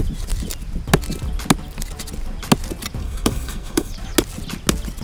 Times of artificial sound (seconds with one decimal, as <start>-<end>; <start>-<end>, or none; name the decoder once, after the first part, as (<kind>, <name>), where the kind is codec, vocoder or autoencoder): 3.0-3.9 (codec, SNAC)